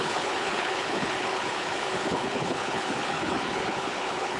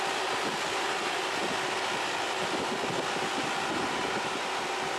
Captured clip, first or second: second